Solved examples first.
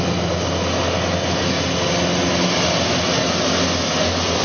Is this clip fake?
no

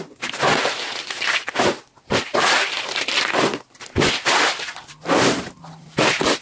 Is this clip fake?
yes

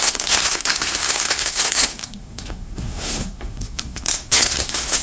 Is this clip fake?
yes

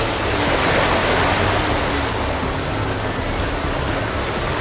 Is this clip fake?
no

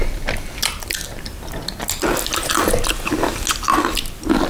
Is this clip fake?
no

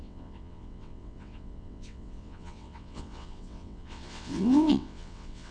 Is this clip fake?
yes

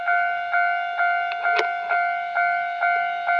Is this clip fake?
no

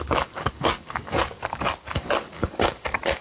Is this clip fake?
yes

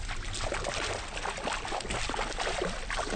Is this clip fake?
no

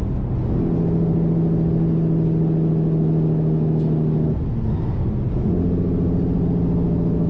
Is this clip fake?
no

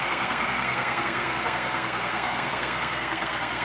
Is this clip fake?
yes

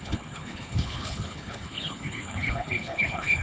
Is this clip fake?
yes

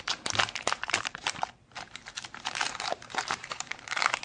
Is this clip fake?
yes